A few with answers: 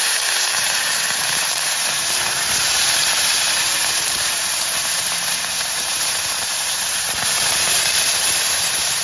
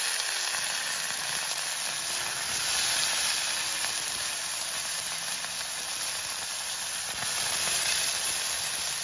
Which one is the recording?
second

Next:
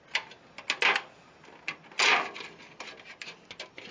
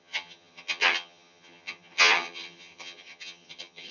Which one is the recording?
first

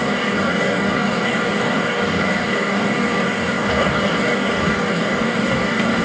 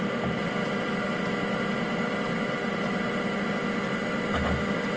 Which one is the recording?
second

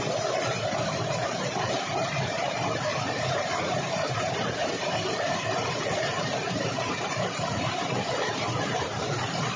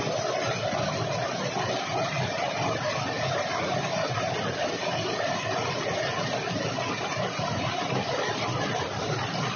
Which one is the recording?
second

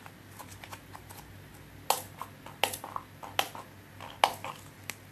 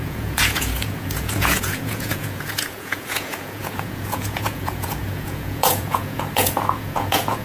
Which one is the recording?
first